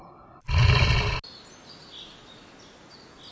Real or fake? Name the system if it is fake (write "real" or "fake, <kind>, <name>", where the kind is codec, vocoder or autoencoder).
real